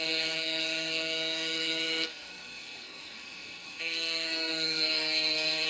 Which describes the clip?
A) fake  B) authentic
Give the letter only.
A